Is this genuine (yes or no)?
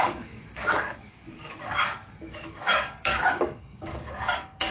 no